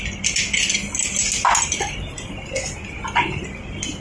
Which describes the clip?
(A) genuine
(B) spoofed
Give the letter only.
A